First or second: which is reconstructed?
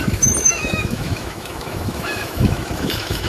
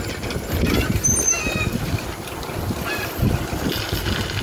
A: first